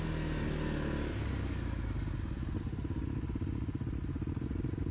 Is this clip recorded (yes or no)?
yes